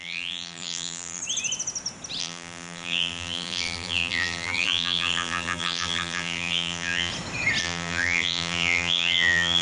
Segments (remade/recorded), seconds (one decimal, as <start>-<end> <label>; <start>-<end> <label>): 0.0-1.2 remade; 1.2-2.2 recorded; 2.2-7.1 remade; 7.1-7.6 recorded; 7.6-9.6 remade